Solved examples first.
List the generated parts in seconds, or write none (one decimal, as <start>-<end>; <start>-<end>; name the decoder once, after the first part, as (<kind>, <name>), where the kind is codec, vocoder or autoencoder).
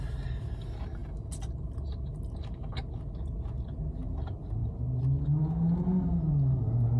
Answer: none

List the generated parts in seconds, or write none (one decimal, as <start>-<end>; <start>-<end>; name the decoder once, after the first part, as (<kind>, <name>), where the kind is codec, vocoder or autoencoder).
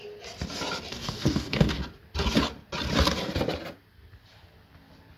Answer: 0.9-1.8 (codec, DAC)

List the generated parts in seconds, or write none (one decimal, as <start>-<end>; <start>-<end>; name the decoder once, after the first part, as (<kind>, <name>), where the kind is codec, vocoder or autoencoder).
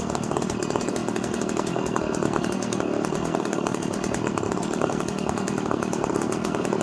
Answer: 0.0-6.8 (codec, SNAC)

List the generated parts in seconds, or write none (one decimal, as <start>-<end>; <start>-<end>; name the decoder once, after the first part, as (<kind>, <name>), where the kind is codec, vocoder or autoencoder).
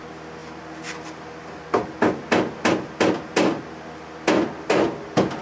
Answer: none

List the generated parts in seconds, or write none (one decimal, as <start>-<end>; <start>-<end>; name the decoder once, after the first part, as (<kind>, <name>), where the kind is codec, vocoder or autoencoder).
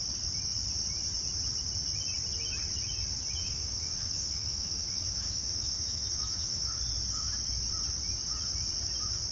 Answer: 3.4-6.8 (autoencoder, DAC-VAE)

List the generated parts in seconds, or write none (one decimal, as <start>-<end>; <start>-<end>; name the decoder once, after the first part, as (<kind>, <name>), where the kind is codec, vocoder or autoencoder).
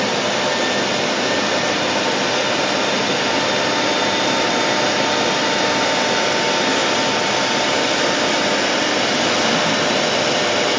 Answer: none